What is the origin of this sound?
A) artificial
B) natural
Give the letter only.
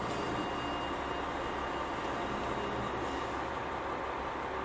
B